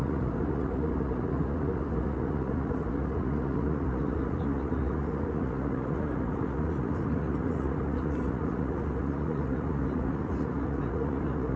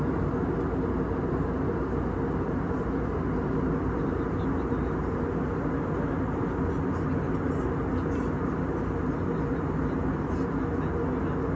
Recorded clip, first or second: second